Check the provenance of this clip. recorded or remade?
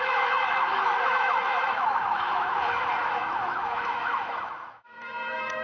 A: remade